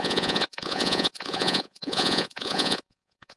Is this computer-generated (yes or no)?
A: yes